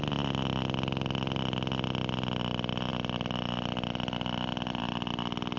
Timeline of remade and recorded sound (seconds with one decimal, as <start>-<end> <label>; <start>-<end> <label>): 0.0-5.6 recorded